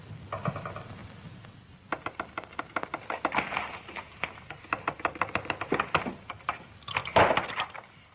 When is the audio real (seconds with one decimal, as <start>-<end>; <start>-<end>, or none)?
0.0-8.1